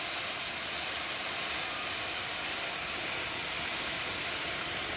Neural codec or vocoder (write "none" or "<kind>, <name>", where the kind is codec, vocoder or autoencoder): none